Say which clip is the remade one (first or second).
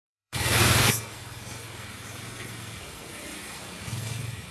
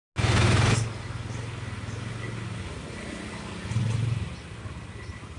first